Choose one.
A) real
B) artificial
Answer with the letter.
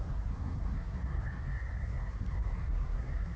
B